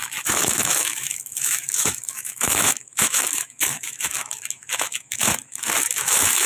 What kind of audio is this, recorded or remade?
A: remade